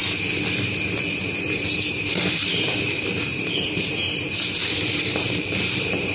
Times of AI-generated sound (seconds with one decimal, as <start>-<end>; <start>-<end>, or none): 0.6-6.1